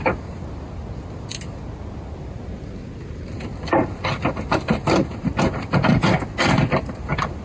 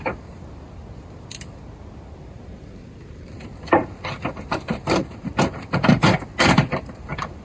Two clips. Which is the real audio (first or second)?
first